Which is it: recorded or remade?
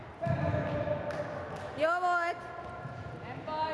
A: recorded